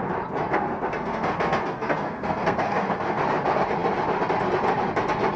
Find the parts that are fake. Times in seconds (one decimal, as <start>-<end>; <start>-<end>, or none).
0.5-3.2